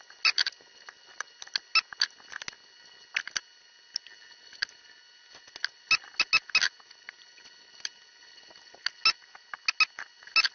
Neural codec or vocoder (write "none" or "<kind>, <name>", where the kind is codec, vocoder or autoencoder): none